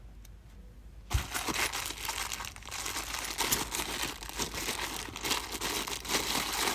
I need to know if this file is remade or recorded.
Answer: recorded